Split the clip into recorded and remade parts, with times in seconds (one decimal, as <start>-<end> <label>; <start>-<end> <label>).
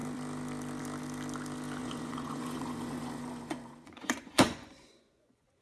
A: 0.0-1.8 recorded; 1.8-5.6 remade